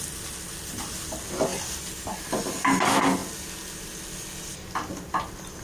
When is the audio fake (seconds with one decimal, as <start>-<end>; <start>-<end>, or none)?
none